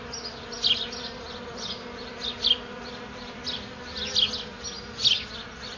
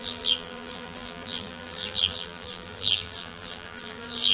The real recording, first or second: first